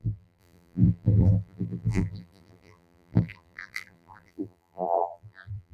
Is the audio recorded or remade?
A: remade